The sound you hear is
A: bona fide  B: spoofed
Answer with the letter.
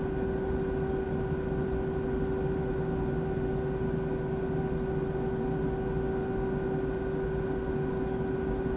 A